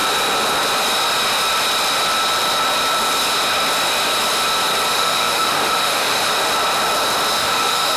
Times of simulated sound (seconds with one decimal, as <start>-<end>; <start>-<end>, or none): 4.9-6.3; 7.4-8.0